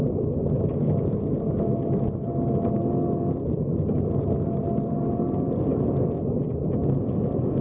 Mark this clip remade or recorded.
recorded